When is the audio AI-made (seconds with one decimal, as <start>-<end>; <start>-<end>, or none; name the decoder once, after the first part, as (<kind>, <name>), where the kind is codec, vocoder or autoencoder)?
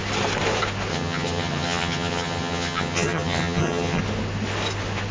0.9-4.0 (vocoder, HiFi-GAN)